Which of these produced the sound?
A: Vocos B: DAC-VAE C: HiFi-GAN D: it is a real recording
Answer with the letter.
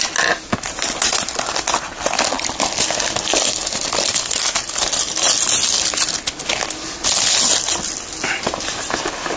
D